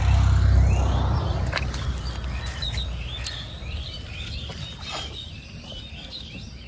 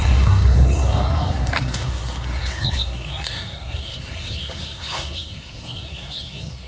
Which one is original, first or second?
first